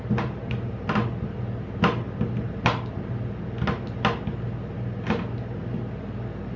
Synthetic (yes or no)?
no